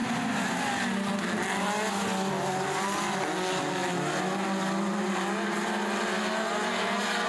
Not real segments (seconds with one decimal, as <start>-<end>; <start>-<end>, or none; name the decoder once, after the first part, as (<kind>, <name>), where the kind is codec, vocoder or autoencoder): none